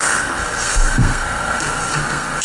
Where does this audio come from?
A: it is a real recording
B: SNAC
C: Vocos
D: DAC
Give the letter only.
B